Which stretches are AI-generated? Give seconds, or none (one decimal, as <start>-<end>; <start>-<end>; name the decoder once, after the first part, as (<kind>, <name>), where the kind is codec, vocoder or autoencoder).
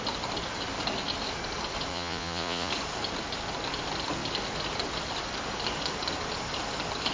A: 1.9-2.7 (vocoder, Vocos)